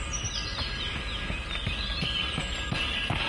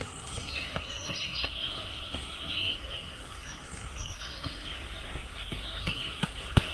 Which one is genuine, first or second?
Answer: first